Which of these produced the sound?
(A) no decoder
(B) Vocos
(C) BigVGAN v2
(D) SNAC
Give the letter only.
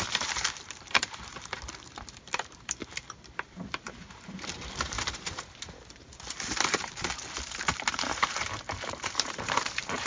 C